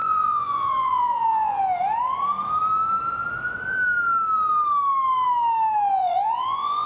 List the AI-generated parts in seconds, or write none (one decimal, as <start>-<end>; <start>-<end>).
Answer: 0.0-1.6; 5.9-6.9